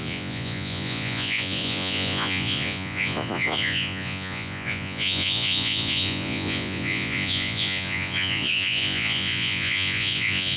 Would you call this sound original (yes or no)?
no